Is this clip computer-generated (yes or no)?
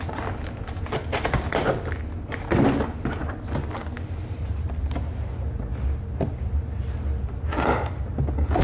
no